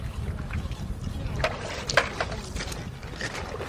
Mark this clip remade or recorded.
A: recorded